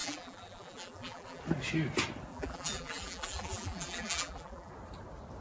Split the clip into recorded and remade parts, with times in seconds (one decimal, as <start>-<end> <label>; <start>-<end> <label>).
0.0-1.4 remade; 1.4-2.3 recorded; 2.3-4.7 remade; 4.7-5.4 recorded